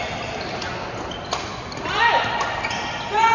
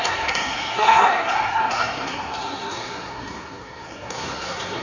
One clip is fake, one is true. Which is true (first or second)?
first